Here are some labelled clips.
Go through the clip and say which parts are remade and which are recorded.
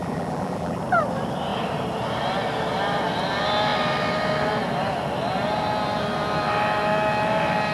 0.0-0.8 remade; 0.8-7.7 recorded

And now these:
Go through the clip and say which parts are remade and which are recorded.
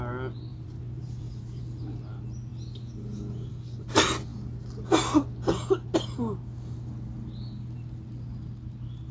0.0-0.5 recorded; 0.5-1.6 remade; 1.6-9.1 recorded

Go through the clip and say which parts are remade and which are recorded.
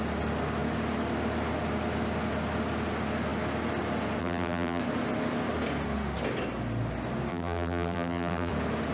0.0-4.2 recorded; 4.2-4.8 remade; 4.8-7.3 recorded; 7.3-8.5 remade; 8.5-8.9 recorded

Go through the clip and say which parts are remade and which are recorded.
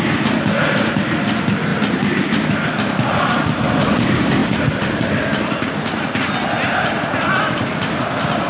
0.0-8.5 recorded